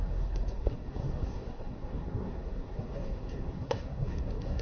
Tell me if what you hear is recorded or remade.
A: remade